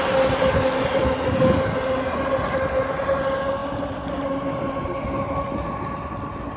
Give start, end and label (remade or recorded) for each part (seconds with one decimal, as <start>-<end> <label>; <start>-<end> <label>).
0.0-6.6 recorded